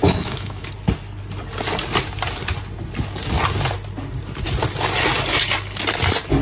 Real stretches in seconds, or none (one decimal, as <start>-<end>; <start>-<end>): 0.7-6.4